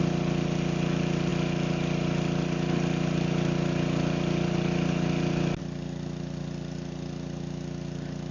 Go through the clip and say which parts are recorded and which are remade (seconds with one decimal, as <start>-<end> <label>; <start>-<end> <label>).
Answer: 0.0-8.3 recorded